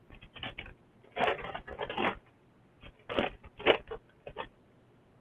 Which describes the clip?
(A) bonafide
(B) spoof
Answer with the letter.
A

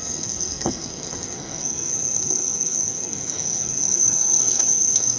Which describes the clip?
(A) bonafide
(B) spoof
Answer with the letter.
B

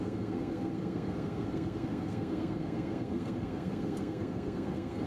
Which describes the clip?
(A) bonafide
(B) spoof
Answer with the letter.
B